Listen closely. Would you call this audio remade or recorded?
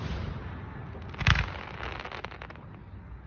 recorded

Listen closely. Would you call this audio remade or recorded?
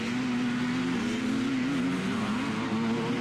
recorded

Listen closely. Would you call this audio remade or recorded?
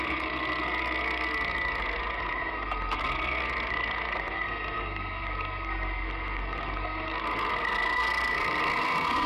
remade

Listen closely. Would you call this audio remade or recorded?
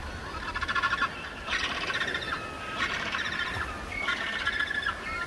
recorded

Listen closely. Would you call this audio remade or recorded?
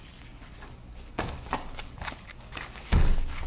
remade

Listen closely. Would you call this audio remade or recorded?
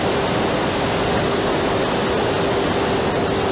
recorded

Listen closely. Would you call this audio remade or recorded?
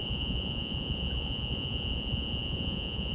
remade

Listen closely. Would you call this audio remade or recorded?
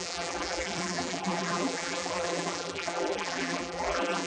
remade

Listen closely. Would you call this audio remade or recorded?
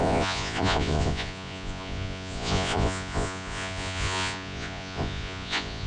remade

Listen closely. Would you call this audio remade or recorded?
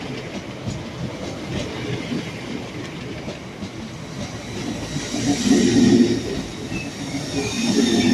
recorded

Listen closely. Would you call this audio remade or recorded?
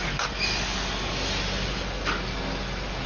recorded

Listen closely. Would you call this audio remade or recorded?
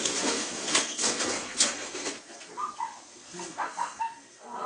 remade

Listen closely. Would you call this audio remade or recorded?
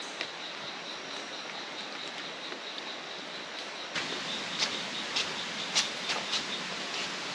recorded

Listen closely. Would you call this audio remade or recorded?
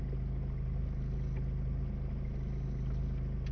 recorded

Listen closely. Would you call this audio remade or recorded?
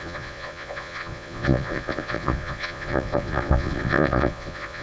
remade